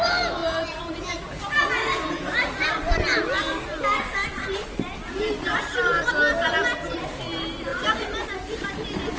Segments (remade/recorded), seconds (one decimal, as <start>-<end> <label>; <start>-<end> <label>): 0.0-4.6 recorded; 4.6-6.1 remade; 6.1-7.7 recorded; 7.7-8.7 remade; 8.7-9.2 recorded